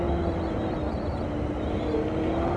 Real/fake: real